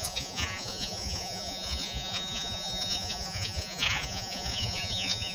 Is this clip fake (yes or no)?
yes